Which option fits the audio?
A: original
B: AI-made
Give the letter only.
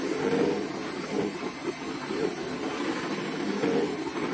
A